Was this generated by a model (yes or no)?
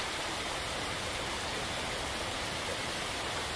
yes